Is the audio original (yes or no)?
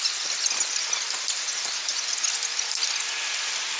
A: yes